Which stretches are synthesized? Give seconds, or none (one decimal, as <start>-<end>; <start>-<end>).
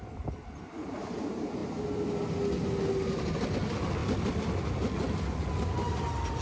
none